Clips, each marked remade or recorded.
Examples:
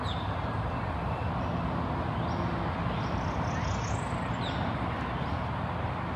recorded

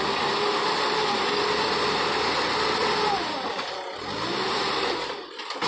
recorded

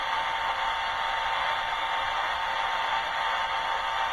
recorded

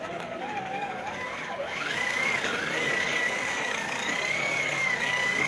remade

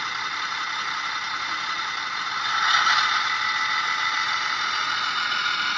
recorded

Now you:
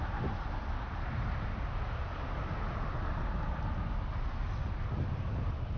recorded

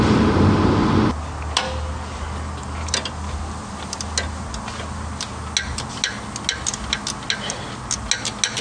recorded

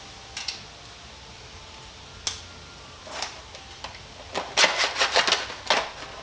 recorded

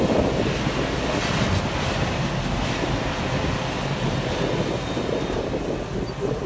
recorded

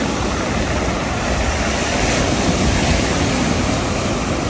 recorded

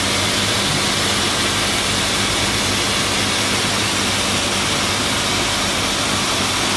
recorded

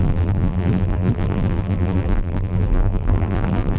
remade